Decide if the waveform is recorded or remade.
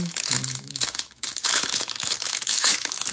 remade